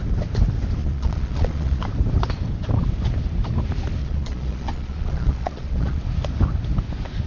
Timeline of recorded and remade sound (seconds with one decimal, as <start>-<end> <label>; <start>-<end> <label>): 0.0-0.8 recorded; 0.8-1.8 remade; 1.8-4.0 recorded; 4.0-6.0 remade; 6.0-7.3 recorded